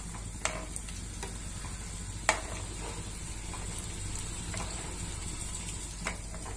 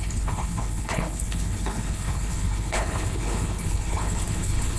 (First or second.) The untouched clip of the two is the first